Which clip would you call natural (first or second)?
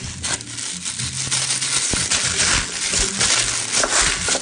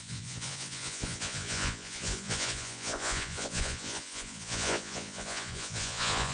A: first